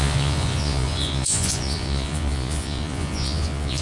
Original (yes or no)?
no